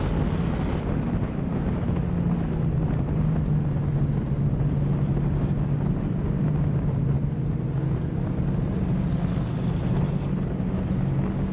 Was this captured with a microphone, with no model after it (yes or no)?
yes